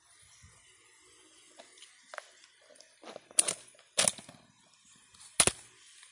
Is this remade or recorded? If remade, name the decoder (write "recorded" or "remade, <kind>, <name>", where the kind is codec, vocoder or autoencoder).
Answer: recorded